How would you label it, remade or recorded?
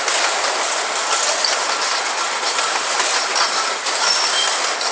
recorded